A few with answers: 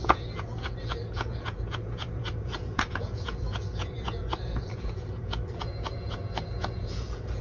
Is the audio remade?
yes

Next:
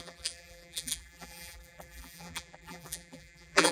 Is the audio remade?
yes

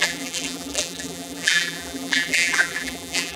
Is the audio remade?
yes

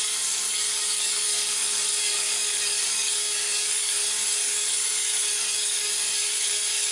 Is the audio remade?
yes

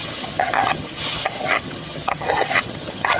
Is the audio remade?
yes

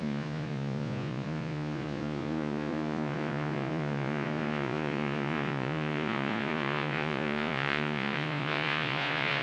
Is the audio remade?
yes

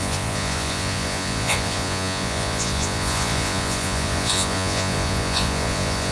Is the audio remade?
yes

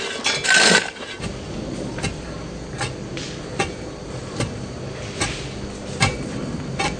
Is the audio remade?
no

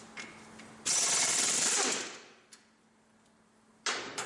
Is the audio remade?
no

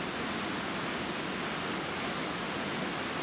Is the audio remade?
no